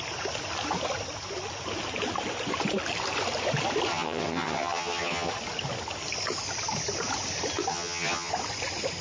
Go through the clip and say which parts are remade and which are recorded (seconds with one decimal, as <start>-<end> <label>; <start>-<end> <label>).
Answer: 0.0-3.9 recorded; 3.9-5.3 remade; 5.3-7.7 recorded; 7.7-8.3 remade; 8.3-9.0 recorded